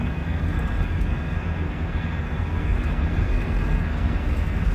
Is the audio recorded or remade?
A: remade